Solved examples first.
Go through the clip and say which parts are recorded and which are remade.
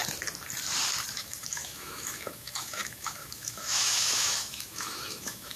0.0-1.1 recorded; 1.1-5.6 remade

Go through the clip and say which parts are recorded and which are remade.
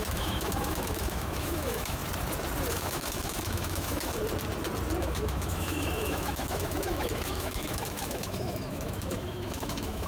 0.0-2.0 remade; 2.0-2.7 recorded; 2.7-4.2 remade; 4.2-5.0 recorded; 5.0-10.1 remade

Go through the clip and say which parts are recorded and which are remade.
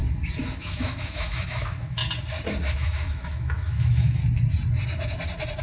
0.0-0.6 recorded; 0.6-2.0 remade; 2.0-2.7 recorded; 2.7-4.2 remade; 4.2-5.6 recorded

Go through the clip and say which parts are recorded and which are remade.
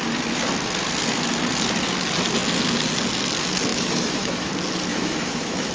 0.0-3.7 recorded; 3.7-4.5 remade; 4.5-4.9 recorded; 4.9-5.7 remade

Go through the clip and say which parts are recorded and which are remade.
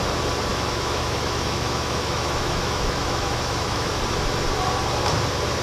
0.0-0.5 recorded; 0.5-3.9 remade; 3.9-5.6 recorded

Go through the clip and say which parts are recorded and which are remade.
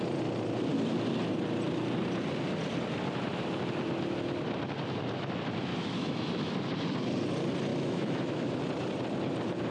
0.0-5.7 recorded; 5.7-6.5 remade; 6.5-7.7 recorded; 7.7-8.5 remade; 8.5-9.7 recorded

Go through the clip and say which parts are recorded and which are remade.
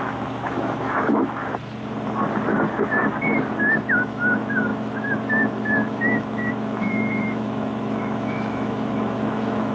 0.0-1.4 remade; 1.4-3.9 recorded; 3.9-9.7 remade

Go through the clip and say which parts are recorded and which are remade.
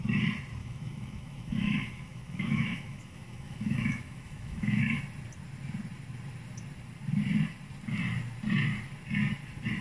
0.0-0.6 recorded; 0.6-5.0 remade; 5.0-9.8 recorded